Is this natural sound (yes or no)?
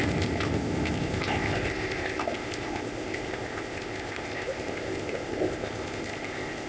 no